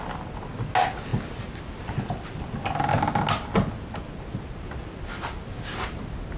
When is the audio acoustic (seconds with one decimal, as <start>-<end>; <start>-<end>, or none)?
0.0-6.4